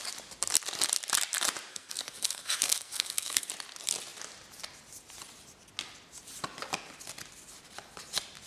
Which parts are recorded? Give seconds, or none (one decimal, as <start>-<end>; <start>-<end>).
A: 0.0-1.7; 3.5-8.5

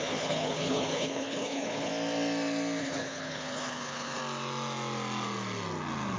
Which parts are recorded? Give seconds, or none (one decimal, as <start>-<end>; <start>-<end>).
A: 1.9-2.8; 4.2-6.2

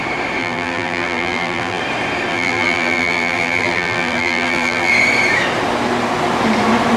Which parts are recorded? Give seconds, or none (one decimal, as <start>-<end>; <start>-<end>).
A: 0.0-0.4; 1.8-2.3; 4.9-7.0

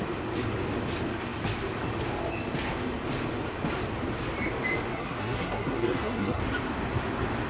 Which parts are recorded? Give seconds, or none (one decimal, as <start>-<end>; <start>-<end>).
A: 0.0-4.9; 6.4-7.5

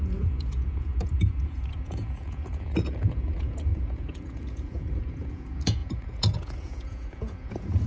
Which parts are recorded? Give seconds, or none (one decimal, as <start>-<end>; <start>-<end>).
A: none

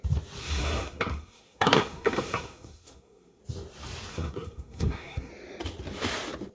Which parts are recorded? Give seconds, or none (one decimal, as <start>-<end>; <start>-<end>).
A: 0.0-0.4; 3.4-4.1; 5.3-6.5